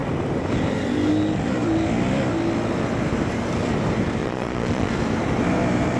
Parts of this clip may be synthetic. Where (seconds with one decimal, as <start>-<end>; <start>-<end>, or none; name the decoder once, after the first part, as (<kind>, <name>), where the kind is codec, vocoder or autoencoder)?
4.2-4.9 (vocoder, Vocos)